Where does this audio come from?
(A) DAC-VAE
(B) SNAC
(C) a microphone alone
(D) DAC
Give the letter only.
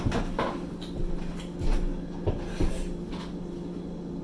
C